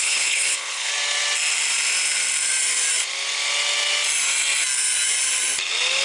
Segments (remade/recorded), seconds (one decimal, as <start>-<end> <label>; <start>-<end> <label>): 0.0-0.9 remade; 0.9-6.0 recorded